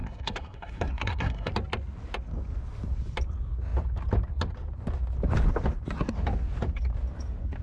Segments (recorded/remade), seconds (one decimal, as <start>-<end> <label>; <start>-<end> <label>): 0.0-1.5 remade; 1.5-7.6 recorded